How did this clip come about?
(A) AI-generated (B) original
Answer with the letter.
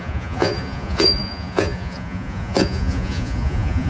A